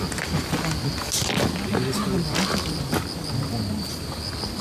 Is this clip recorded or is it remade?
recorded